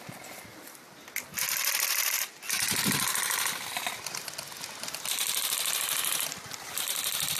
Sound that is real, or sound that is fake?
real